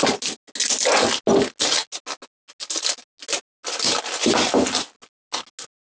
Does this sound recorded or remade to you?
recorded